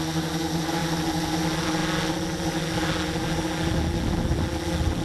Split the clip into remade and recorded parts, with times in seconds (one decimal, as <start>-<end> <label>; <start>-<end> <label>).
0.0-5.0 recorded